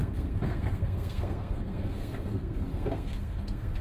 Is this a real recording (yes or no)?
no